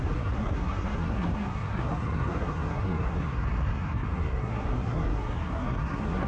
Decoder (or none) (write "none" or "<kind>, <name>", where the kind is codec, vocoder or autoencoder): codec, SNAC